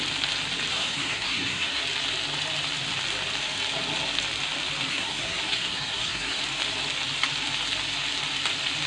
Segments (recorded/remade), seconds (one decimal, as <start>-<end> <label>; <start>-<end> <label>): 0.0-0.7 recorded; 0.7-1.8 remade; 1.8-4.9 recorded; 4.9-6.4 remade; 6.4-8.9 recorded